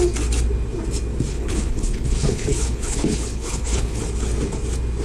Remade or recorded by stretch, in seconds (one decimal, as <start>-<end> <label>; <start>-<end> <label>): 0.0-1.3 recorded; 1.3-4.0 remade; 4.0-5.0 recorded